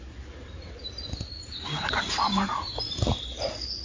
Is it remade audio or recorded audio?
recorded